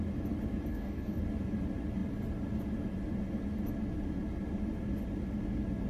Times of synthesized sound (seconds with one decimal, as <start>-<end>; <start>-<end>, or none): 0.7-1.2